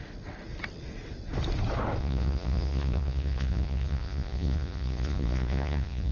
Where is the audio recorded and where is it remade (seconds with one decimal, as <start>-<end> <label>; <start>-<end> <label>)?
0.0-2.0 recorded; 2.0-6.1 remade